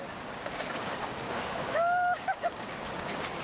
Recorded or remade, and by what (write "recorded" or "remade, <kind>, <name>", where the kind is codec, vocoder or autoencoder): remade, codec, DAC